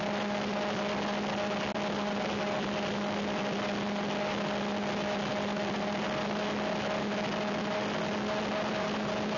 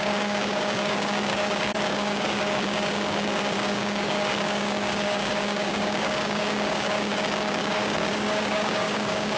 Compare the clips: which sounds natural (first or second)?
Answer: first